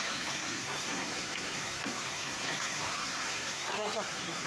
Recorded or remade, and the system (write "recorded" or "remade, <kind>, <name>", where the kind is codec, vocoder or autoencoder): remade, codec, SNAC